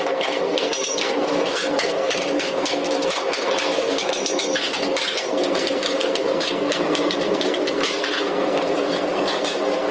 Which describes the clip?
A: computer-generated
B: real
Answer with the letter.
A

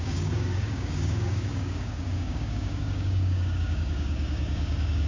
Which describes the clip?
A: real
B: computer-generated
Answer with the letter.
B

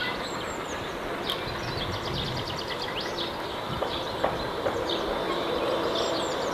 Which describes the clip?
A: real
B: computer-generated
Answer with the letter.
A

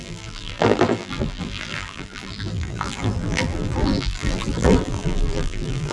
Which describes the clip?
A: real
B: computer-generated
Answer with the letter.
B